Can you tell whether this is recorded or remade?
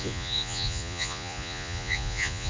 remade